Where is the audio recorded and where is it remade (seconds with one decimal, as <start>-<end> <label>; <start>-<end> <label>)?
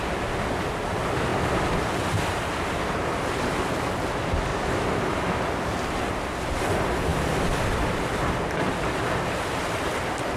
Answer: 0.0-4.5 recorded; 4.5-5.2 remade; 5.2-10.4 recorded